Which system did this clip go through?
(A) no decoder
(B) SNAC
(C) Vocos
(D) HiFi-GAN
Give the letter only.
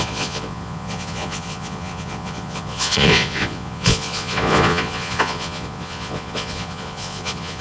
C